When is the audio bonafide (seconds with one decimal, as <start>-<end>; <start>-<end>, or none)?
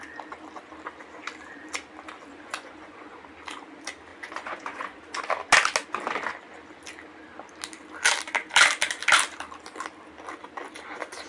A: 0.0-2.3; 3.2-4.1; 5.0-11.3